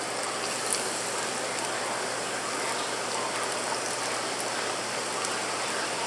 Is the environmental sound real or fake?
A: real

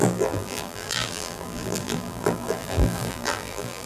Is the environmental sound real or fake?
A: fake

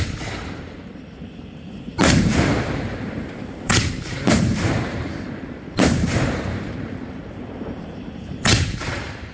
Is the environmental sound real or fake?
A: fake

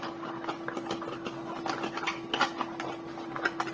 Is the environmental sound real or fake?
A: real